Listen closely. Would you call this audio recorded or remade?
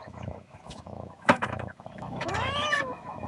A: remade